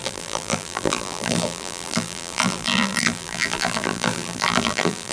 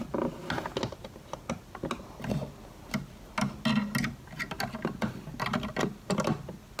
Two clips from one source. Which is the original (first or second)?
second